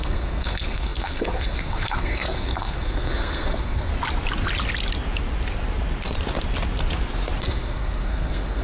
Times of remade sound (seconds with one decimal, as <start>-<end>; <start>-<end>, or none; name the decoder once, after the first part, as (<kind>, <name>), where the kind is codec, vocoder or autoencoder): 0.0-3.9 (codec, SNAC); 7.4-8.6